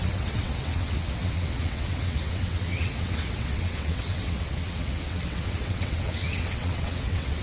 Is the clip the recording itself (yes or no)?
no